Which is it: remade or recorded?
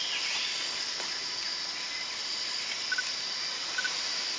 recorded